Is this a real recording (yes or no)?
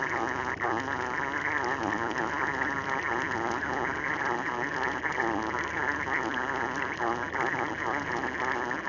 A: yes